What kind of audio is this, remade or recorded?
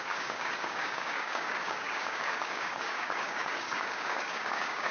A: remade